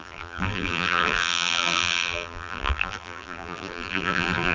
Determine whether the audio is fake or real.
fake